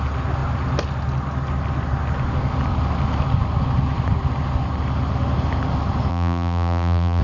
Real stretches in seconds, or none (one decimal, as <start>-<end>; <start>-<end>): 0.0-6.1